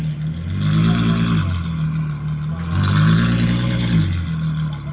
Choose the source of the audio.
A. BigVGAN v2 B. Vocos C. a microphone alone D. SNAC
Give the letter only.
C